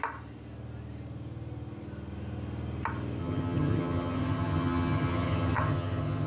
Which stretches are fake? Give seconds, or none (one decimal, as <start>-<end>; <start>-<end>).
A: 3.2-6.3